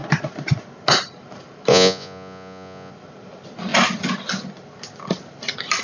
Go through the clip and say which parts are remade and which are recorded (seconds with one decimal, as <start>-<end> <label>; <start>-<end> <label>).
0.0-1.7 recorded; 1.7-2.9 remade; 2.9-5.8 recorded